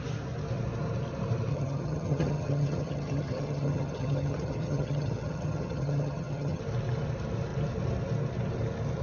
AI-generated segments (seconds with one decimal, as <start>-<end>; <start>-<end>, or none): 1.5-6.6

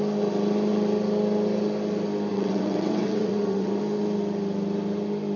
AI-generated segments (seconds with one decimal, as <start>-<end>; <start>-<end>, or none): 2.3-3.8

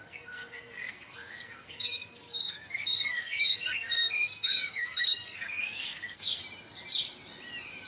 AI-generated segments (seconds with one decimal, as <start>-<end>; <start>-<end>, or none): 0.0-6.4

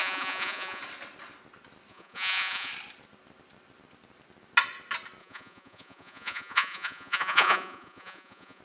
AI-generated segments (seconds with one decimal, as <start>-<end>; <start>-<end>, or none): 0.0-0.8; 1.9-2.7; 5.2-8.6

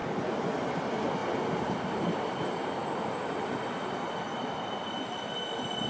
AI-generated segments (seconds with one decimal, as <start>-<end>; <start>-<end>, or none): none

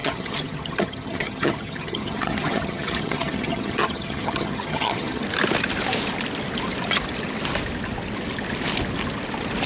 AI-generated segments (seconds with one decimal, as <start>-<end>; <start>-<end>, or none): 0.0-5.2

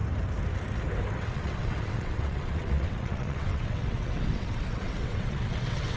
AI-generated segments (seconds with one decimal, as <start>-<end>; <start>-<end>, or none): 1.2-6.0